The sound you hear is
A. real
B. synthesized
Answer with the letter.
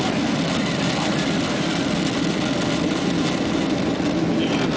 A